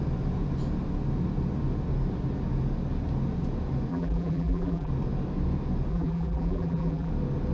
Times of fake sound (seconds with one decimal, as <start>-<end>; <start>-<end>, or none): 3.9-4.9; 5.9-7.1